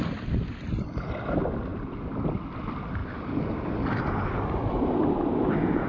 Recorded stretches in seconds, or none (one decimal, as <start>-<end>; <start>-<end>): 0.0-5.9